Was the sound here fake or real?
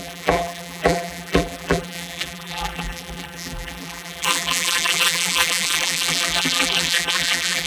fake